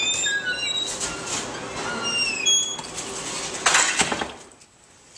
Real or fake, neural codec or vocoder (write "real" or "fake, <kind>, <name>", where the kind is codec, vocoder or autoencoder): real